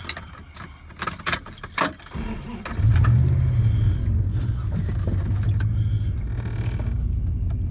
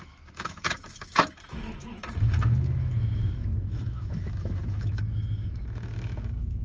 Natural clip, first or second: first